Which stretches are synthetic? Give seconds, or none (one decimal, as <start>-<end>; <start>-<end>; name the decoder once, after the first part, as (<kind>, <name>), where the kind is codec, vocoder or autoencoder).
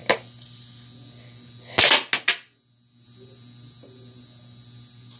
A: none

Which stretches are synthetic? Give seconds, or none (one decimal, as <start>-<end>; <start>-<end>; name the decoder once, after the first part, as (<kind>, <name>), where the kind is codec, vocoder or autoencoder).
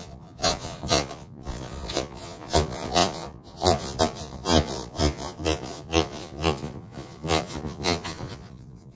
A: 0.0-8.9 (vocoder, Vocos)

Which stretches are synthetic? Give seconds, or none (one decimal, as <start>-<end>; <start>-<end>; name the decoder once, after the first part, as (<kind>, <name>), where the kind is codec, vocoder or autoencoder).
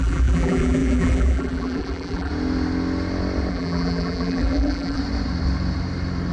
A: 0.0-2.3 (vocoder, BigVGAN v2); 3.5-5.0